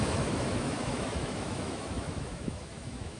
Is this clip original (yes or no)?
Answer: no